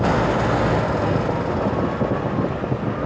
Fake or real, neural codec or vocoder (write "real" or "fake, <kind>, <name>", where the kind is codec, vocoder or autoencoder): real